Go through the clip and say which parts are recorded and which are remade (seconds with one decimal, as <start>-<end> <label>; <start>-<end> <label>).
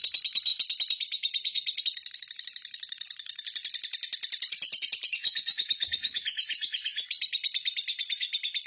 0.0-8.7 remade